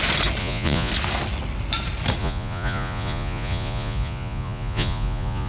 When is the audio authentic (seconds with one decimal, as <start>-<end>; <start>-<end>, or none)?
0.0-0.4; 0.9-2.2